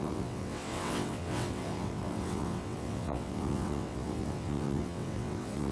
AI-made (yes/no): yes